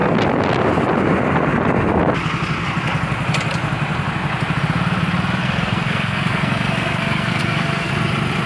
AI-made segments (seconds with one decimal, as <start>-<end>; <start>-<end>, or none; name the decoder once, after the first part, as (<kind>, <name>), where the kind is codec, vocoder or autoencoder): 5.4-7.9 (codec, SNAC)